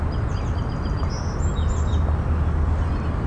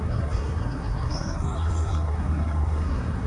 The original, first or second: first